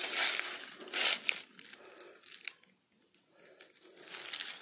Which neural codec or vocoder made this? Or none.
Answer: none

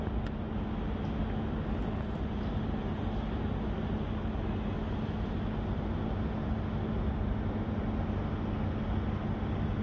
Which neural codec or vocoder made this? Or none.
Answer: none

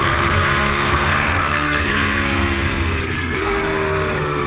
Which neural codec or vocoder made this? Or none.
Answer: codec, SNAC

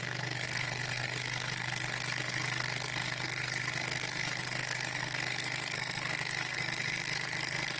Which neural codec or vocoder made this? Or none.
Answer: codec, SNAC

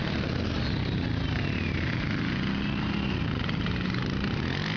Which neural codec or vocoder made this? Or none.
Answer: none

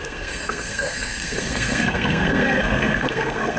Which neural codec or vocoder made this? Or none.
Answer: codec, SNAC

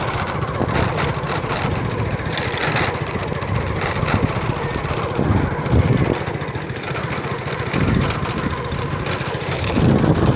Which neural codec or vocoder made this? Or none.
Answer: none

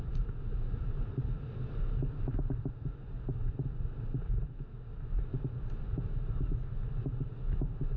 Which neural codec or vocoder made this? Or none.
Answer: none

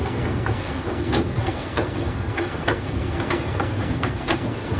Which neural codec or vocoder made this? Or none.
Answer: codec, SNAC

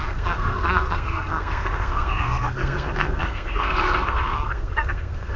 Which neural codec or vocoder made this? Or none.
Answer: codec, SNAC